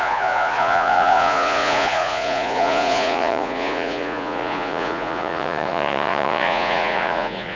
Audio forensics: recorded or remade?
remade